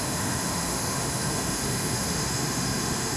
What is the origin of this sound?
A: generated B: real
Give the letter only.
A